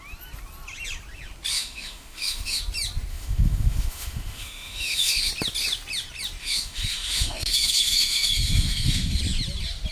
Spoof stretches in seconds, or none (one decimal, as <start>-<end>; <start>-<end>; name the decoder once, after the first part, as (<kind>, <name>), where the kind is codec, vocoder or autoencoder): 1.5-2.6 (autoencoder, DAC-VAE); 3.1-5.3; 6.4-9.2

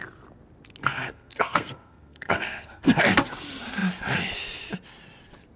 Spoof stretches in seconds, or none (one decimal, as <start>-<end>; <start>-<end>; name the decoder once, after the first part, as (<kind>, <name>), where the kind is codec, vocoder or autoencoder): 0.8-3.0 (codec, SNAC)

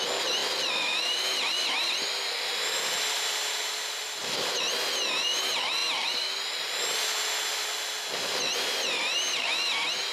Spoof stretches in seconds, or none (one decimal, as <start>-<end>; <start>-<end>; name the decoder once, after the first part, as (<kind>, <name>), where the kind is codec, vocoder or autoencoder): 0.4-4.6 (vocoder, BigVGAN v2)

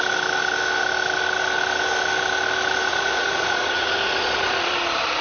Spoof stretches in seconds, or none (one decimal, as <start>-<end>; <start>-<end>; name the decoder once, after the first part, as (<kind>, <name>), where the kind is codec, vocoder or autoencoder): 2.9-4.7 (vocoder, Vocos)